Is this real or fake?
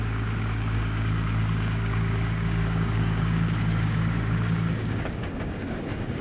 fake